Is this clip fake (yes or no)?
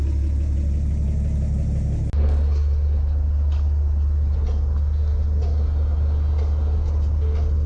no